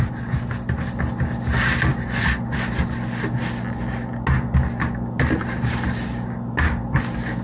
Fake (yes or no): no